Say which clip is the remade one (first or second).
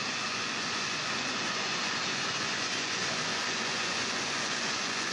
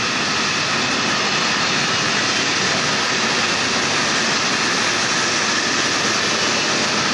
first